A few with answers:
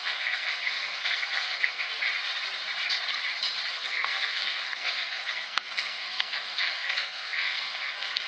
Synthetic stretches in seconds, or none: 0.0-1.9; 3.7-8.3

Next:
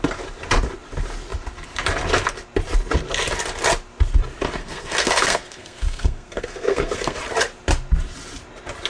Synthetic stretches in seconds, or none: 4.6-7.2

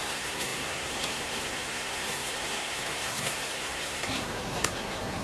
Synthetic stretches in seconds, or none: 0.0-5.2

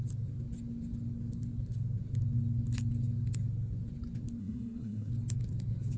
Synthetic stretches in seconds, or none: 4.4-5.1